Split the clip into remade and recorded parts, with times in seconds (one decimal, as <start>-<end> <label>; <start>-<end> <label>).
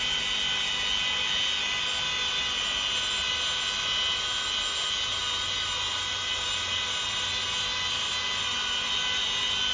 0.0-9.7 recorded